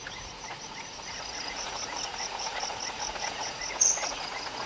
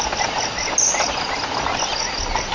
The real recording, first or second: second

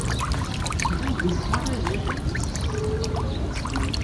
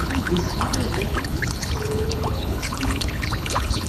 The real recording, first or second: first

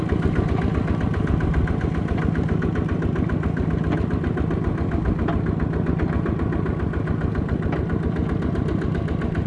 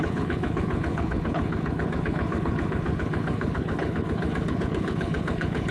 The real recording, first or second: first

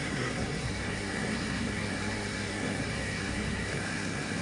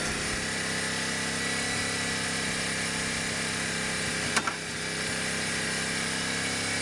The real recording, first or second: second